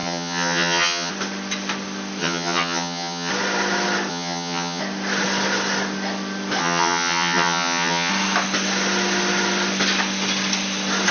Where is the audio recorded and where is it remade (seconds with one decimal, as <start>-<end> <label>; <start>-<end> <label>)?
0.0-1.1 remade; 1.1-2.2 recorded; 2.2-3.3 remade; 3.3-4.1 recorded; 4.1-4.8 remade; 4.8-6.6 recorded; 6.6-8.1 remade; 8.1-11.1 recorded